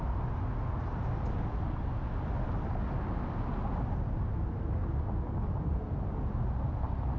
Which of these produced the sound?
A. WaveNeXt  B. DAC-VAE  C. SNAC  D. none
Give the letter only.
D